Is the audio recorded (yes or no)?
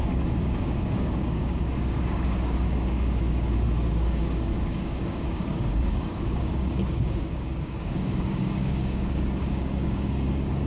no